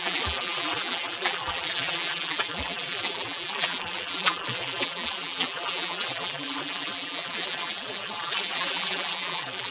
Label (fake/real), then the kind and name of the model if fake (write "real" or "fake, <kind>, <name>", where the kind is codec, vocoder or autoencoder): fake, vocoder, BigVGAN v2